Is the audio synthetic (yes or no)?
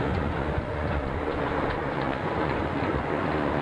yes